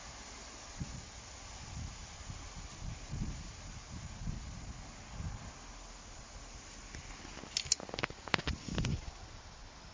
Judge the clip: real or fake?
real